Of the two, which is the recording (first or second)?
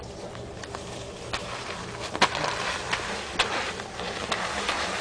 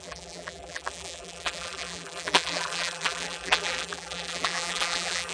first